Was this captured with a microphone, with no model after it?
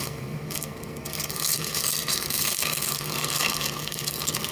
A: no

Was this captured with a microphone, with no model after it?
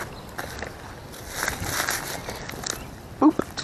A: yes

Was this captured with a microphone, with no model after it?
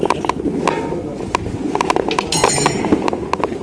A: yes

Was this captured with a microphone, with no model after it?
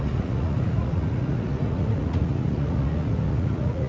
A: no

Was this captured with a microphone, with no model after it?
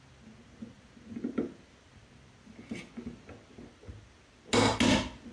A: yes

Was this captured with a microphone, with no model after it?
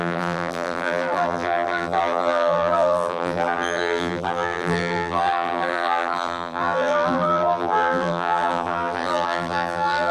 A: no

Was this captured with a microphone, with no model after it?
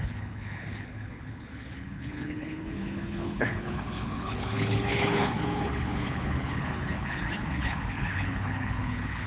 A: no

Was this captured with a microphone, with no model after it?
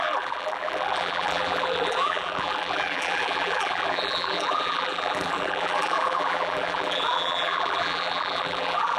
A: no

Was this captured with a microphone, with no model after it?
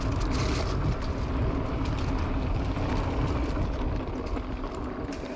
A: yes